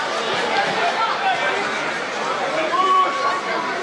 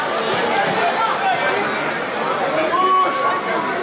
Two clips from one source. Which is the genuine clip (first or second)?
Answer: second